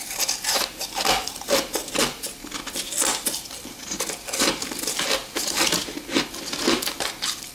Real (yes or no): yes